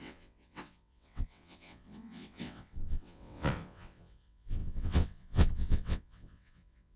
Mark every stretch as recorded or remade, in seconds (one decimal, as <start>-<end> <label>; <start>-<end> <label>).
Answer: 0.0-7.0 remade